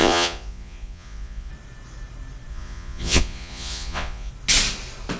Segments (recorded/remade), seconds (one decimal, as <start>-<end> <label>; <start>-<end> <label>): 0.0-1.5 remade; 1.5-2.5 recorded; 2.5-4.3 remade; 4.3-5.2 recorded